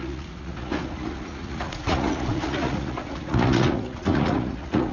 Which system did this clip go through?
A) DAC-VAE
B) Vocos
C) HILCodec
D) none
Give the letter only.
B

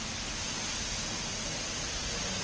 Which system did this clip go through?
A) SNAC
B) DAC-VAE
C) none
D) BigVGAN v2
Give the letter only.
C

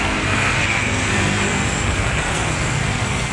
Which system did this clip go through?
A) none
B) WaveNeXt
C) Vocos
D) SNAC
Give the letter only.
D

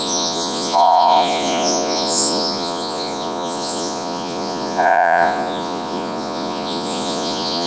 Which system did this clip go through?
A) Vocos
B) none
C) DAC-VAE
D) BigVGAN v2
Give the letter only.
A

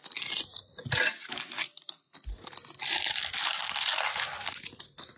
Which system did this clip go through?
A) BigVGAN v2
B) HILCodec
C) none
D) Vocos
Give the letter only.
C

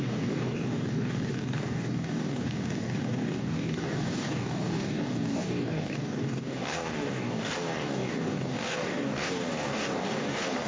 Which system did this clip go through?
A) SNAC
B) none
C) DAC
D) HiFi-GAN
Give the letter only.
C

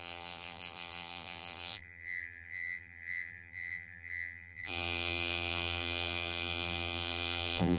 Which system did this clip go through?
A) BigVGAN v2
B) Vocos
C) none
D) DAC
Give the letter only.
A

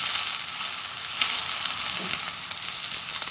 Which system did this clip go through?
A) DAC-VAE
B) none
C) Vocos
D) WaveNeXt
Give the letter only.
B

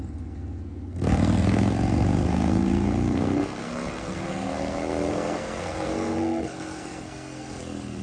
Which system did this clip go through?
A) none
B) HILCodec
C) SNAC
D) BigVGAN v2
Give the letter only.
C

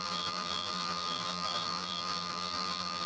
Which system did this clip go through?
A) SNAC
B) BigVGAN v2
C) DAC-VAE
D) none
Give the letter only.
B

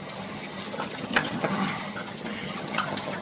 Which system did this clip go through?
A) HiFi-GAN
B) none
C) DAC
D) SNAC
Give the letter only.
A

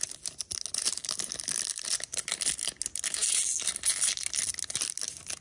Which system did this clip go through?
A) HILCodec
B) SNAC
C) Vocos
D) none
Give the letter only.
D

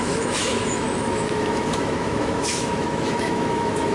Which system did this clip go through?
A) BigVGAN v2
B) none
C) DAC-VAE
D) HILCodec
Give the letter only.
C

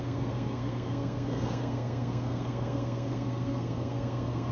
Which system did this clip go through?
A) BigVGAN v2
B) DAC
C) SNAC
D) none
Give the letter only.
C